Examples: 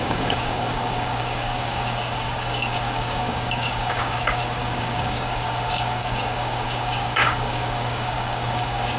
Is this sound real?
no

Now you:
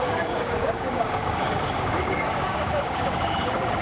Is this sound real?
no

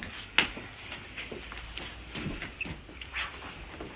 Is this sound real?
yes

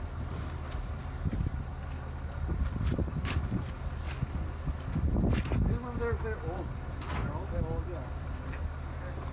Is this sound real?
yes